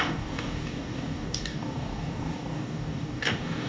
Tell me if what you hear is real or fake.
fake